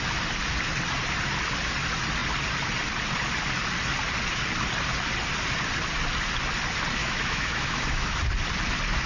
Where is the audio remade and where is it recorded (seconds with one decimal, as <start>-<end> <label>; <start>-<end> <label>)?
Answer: 0.0-7.0 recorded; 7.0-8.2 remade; 8.2-9.1 recorded